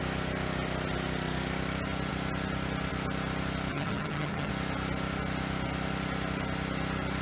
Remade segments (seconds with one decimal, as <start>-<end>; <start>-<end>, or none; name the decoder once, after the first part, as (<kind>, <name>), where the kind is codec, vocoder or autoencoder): 3.7-4.5 (vocoder, HiFi-GAN)